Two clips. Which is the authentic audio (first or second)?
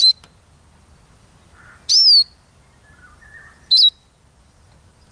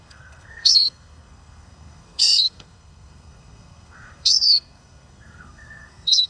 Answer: first